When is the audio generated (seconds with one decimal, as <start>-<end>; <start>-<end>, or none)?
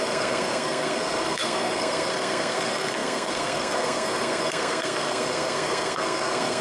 0.0-6.6